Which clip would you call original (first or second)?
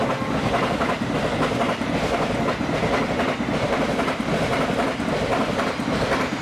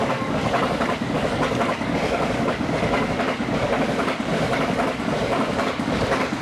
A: first